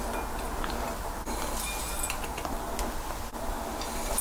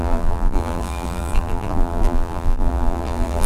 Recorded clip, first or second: first